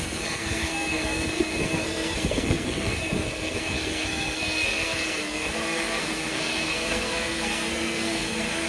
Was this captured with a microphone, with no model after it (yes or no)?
no